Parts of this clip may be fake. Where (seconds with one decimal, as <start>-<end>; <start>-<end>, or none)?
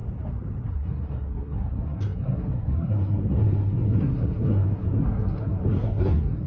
0.7-6.5